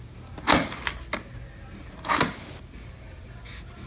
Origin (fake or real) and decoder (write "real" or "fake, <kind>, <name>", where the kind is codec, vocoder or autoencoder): real